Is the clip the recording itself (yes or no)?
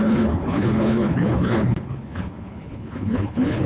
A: no